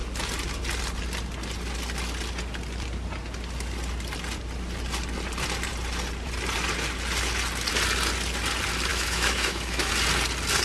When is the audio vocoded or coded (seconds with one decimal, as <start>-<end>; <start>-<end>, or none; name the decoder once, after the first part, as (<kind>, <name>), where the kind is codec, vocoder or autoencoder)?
8.9-9.9 (autoencoder, DAC-VAE)